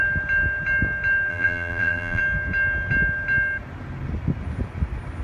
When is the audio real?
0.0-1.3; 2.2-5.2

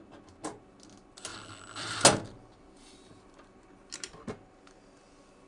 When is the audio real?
0.0-5.5

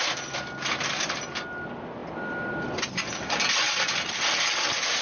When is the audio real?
0.0-5.0